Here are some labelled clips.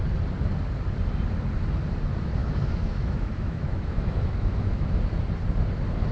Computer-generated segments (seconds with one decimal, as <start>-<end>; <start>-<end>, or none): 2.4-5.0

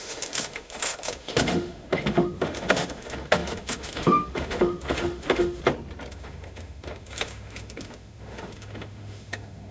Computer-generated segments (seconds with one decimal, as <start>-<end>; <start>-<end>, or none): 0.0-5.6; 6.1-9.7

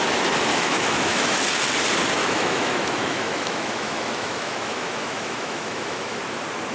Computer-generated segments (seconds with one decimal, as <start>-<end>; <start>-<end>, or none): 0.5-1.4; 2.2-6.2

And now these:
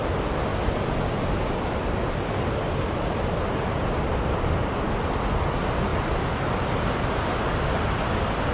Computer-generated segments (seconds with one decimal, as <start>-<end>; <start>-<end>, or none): none

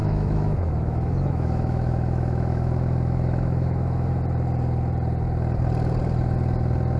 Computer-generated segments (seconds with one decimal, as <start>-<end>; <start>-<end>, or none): 0.0-4.1